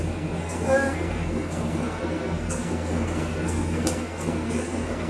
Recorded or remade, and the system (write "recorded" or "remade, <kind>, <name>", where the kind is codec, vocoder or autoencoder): remade, codec, SNAC